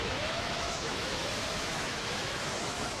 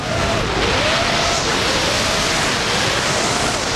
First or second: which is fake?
first